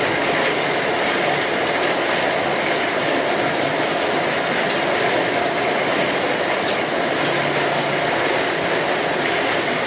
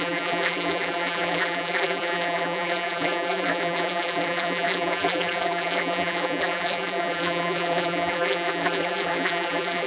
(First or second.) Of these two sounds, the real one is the first